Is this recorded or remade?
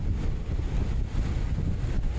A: recorded